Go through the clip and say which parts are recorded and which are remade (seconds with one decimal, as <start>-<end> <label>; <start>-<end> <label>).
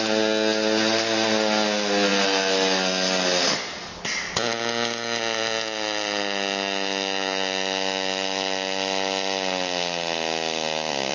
0.0-11.1 recorded